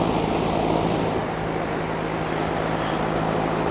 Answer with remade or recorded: recorded